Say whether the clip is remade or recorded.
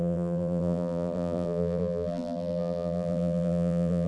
remade